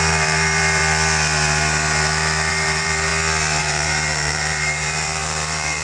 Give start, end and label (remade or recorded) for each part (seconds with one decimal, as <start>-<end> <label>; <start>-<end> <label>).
0.0-0.8 remade; 0.8-2.5 recorded; 2.5-3.1 remade; 3.1-3.6 recorded; 3.6-5.8 remade